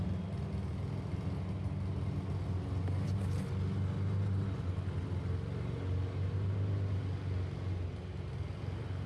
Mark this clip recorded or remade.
recorded